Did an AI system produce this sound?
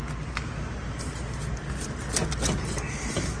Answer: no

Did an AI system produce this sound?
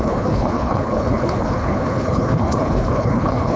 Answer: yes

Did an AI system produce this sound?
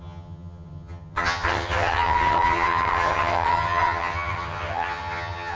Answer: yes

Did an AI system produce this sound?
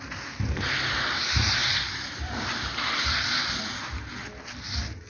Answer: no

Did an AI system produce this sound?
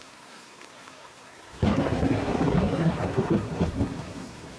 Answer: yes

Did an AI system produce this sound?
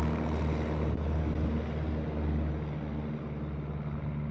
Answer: no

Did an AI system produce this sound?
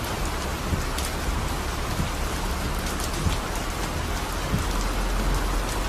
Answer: no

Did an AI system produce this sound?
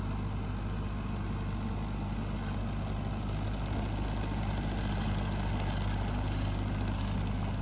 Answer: no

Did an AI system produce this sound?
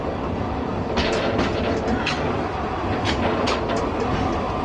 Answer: no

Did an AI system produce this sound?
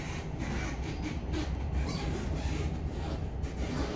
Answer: no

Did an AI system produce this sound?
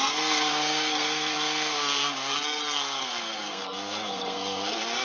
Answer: yes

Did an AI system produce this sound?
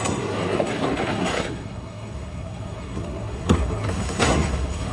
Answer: yes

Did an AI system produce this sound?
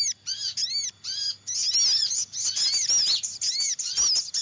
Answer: no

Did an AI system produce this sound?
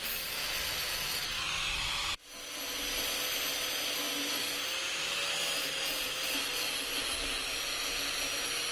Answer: no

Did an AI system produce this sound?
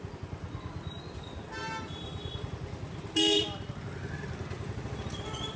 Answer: no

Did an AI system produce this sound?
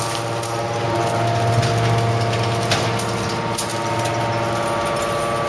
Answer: no